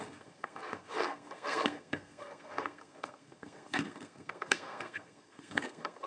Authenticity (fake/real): fake